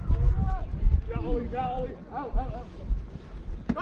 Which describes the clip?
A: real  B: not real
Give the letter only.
A